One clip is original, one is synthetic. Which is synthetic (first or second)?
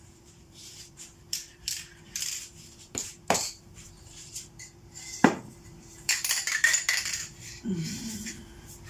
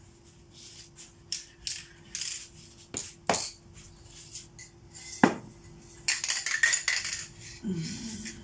first